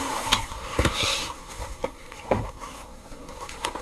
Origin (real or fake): fake